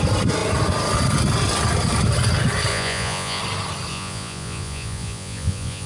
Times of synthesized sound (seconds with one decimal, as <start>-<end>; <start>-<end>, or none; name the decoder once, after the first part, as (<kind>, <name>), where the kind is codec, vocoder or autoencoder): 2.7-3.4 (vocoder, Vocos); 3.9-5.9